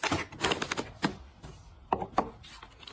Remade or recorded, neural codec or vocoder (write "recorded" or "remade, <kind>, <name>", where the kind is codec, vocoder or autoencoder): recorded